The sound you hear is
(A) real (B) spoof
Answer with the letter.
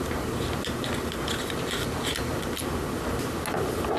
A